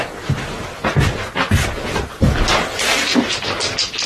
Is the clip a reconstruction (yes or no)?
no